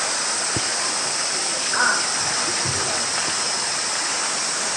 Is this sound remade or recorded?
recorded